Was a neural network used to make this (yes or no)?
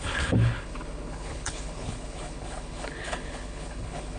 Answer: yes